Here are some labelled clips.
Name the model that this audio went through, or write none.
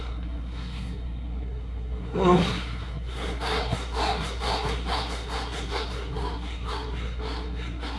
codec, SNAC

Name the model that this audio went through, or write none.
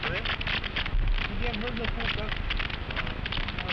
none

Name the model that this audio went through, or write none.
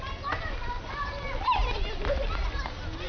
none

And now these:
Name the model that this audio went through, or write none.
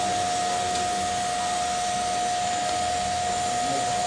none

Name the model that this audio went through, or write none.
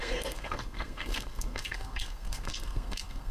codec, SNAC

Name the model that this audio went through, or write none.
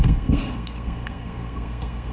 codec, SNAC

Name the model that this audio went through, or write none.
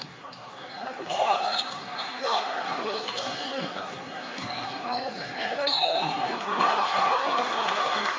codec, SNAC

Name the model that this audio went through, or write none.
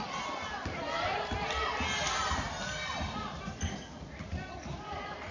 none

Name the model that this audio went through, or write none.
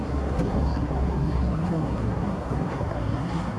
codec, SNAC